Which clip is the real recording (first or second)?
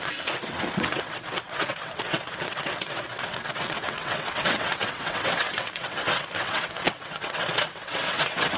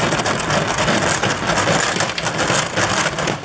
second